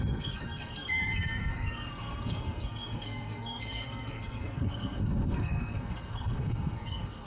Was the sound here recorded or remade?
remade